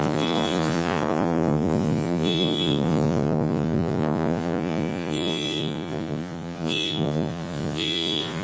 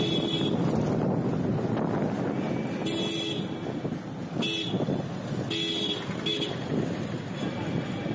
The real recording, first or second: second